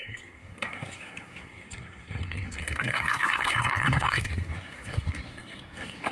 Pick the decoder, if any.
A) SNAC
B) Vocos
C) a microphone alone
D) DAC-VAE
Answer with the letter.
A